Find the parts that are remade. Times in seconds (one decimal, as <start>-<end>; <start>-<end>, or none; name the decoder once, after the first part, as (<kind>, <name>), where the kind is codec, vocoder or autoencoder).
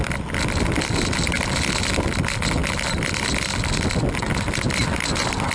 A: none